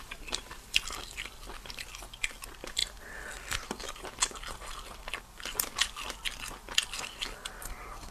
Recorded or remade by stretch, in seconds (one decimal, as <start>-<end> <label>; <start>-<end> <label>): 0.0-8.1 recorded